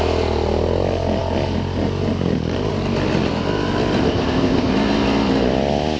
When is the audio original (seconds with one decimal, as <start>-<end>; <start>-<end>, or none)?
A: 0.0-4.0; 4.7-6.0